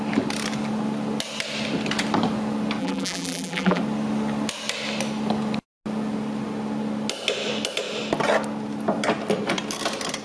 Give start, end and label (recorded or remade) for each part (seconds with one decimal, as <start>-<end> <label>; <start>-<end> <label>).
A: 0.0-2.8 recorded; 2.8-3.8 remade; 3.8-10.2 recorded